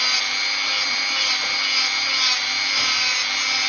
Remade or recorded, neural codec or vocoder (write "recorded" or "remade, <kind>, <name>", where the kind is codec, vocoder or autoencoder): recorded